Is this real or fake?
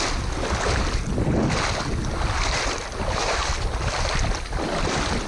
real